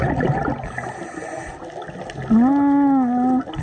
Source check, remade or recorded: recorded